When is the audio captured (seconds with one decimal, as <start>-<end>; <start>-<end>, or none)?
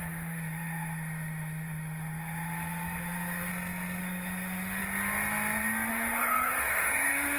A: 3.5-4.0; 4.8-5.9